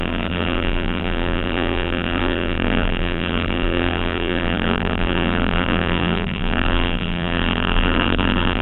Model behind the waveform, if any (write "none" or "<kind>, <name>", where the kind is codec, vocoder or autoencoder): vocoder, BigVGAN v2